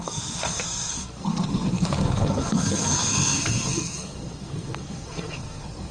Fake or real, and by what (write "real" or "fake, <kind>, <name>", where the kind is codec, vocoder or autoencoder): fake, codec, SNAC